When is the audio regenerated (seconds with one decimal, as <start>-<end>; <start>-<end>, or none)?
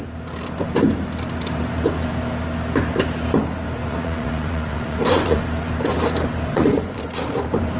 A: 3.8-5.4; 6.5-7.0